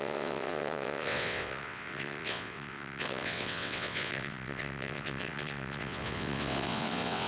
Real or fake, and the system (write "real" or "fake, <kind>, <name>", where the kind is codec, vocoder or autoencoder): fake, vocoder, WaveNeXt